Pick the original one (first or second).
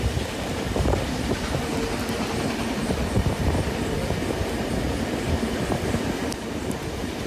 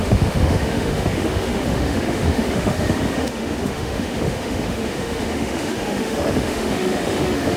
first